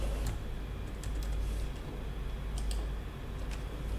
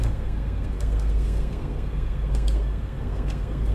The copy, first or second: second